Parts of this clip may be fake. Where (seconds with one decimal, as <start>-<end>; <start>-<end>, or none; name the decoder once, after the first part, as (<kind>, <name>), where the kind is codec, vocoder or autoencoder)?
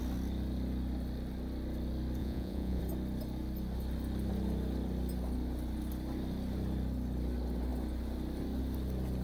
2.2-2.8 (vocoder, Vocos)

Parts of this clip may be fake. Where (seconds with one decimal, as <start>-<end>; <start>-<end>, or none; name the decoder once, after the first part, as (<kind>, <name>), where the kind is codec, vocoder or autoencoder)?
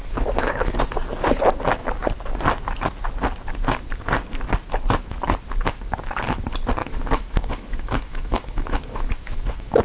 0.0-0.8 (autoencoder, DAC-VAE); 6.8-9.8